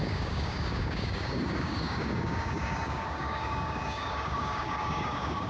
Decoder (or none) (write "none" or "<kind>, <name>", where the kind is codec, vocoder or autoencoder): codec, DAC